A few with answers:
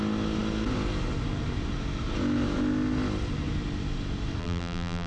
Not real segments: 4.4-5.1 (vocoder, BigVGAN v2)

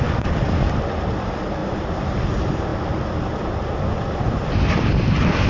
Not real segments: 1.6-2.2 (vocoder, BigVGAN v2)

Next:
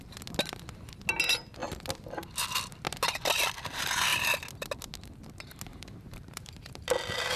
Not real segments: 5.7-6.7 (vocoder, BigVGAN v2)

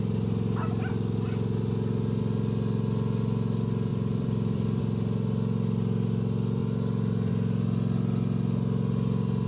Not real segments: 3.9-4.8 (vocoder, BigVGAN v2)

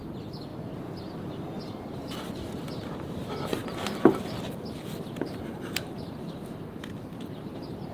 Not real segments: 5.5-6.6 (vocoder, BigVGAN v2)